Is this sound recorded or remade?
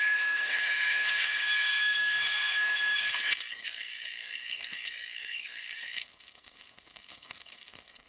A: remade